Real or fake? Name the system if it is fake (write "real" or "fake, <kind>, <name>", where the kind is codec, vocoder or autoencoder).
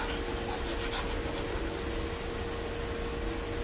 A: real